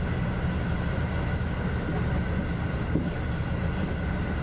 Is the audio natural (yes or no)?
yes